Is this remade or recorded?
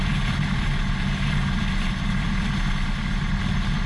recorded